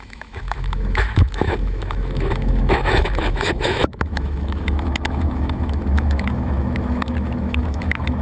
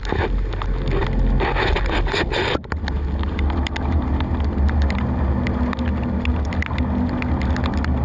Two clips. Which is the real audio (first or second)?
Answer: second